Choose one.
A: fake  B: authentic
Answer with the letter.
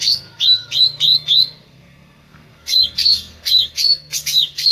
A